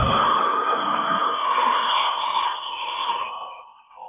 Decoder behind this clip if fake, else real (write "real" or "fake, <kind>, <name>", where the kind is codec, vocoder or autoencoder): fake, codec, SNAC